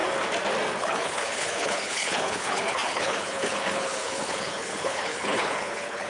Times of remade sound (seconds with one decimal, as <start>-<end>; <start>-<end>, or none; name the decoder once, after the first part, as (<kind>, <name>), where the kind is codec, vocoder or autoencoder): 0.8-6.1 (codec, HILCodec)